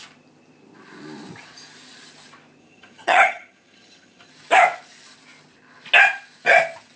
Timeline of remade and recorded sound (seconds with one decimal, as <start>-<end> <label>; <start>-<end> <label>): 0.0-2.6 recorded; 2.6-4.3 remade; 4.3-7.0 recorded